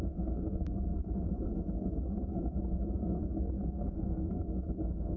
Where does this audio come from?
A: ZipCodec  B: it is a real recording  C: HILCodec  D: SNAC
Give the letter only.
D